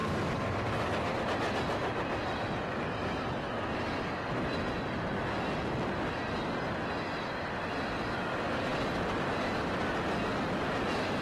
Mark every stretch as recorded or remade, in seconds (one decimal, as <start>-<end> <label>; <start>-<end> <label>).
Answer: 0.0-1.2 remade; 1.2-11.2 recorded